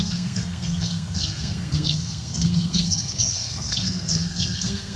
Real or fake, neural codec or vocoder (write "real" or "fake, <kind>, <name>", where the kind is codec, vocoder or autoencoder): fake, codec, SNAC